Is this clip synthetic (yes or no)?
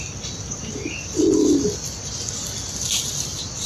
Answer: no